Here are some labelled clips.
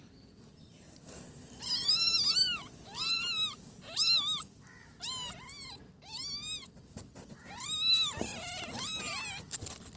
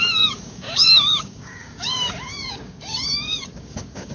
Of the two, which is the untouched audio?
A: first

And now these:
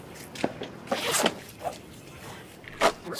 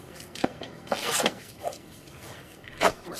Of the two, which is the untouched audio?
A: first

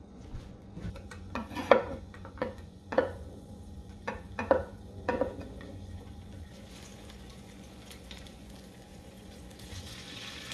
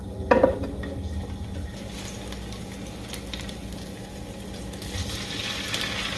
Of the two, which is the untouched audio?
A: second